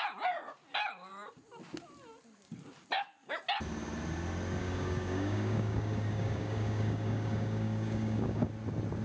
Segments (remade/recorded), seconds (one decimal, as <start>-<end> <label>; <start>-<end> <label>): 0.0-4.6 recorded; 4.6-8.5 remade; 8.5-9.0 recorded